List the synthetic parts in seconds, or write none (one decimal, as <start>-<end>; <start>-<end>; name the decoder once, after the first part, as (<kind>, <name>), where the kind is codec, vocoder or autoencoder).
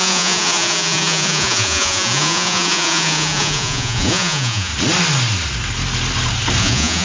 0.0-4.7 (vocoder, Vocos); 6.6-7.0